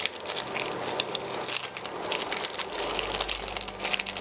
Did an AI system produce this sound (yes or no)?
no